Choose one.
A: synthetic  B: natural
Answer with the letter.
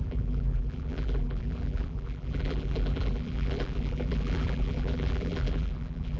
A